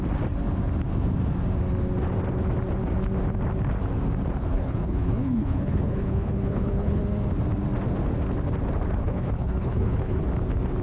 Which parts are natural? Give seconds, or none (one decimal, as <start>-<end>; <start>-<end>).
0.0-4.4; 7.0-9.0; 10.2-10.8